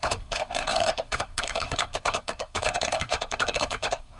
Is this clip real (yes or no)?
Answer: no